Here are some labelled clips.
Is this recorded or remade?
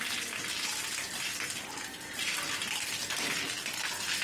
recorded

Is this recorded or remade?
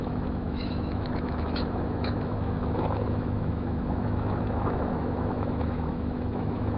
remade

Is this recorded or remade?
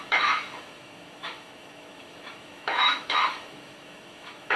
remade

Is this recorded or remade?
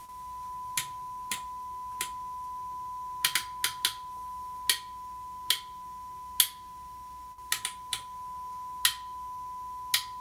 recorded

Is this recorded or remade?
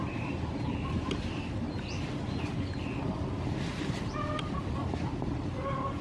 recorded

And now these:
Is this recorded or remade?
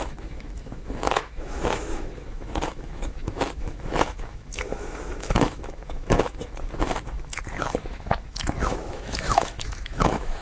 remade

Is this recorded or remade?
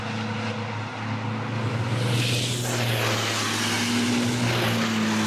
recorded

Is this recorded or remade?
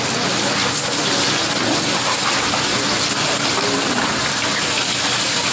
recorded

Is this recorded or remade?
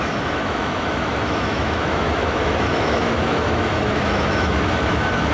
remade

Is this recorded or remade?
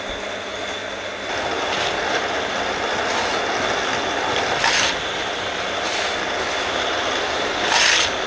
recorded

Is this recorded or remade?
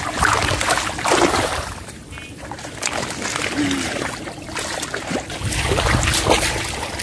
recorded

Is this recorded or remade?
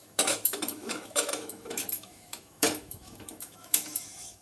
remade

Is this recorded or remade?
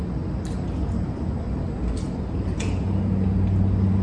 recorded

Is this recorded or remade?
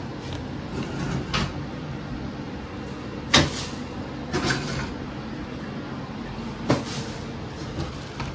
recorded